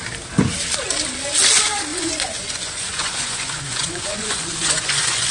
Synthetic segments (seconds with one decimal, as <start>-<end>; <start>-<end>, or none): 1.9-5.3